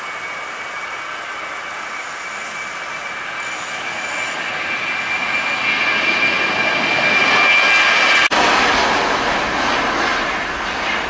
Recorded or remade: recorded